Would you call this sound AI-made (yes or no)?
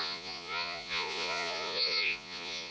yes